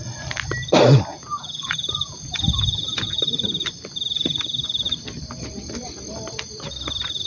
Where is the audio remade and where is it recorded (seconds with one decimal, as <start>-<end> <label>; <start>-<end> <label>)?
0.0-1.1 recorded; 1.1-3.2 remade; 3.2-7.3 recorded